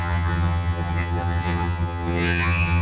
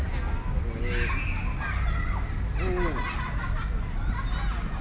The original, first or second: second